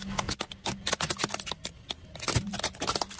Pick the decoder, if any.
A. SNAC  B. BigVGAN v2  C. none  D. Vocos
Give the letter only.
C